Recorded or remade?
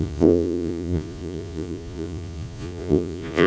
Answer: remade